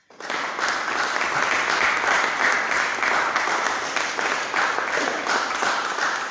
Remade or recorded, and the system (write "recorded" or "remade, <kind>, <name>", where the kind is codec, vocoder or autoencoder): recorded